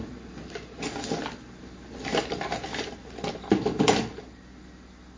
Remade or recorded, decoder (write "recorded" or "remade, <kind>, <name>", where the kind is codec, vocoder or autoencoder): recorded